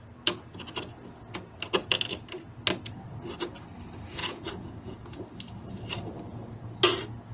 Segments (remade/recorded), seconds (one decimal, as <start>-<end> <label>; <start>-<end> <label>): 0.0-4.2 recorded; 4.2-5.2 remade; 5.2-7.3 recorded